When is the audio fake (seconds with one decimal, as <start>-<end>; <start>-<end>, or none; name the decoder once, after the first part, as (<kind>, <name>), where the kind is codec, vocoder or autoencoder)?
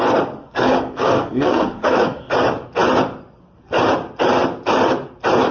0.4-2.3 (codec, SNAC)